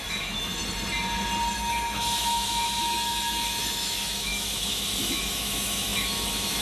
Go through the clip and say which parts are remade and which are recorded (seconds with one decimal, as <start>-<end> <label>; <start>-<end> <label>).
0.0-0.6 remade; 0.6-1.5 recorded; 1.5-6.6 remade